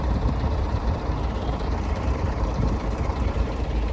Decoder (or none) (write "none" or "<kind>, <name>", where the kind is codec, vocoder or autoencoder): vocoder, BigVGAN v2